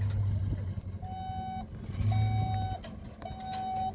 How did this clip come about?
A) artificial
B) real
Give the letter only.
B